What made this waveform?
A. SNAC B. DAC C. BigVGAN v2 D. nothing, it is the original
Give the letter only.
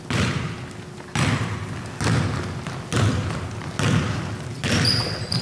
D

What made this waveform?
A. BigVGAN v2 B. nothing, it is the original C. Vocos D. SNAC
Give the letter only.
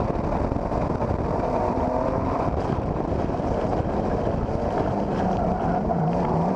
A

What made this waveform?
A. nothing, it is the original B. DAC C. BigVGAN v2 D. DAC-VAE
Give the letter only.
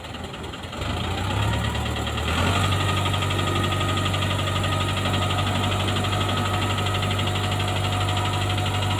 A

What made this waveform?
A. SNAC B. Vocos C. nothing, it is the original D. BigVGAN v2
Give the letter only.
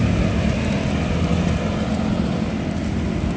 C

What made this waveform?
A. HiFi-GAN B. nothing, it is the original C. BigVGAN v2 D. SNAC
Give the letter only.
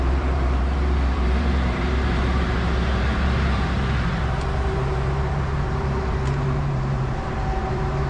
C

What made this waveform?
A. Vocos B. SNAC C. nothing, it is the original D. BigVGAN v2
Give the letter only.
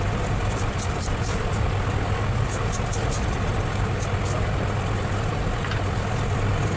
D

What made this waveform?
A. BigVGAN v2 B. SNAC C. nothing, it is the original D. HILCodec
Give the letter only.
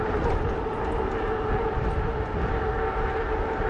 C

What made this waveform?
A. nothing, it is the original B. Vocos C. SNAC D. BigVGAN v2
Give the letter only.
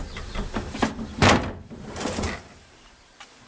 D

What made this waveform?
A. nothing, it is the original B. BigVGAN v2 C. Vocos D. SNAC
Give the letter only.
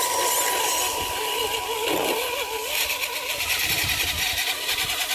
B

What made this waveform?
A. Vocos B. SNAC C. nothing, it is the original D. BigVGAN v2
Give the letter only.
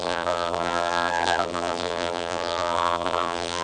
D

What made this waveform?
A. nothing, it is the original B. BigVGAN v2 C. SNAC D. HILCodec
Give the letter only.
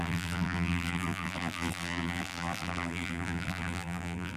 B